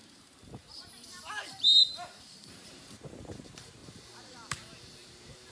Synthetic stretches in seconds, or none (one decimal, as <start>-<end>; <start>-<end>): 0.0-5.5